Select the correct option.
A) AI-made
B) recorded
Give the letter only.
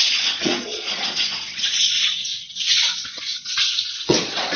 A